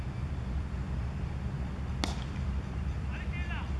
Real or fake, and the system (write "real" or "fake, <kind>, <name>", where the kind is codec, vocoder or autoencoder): real